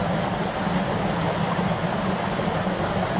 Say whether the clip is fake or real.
real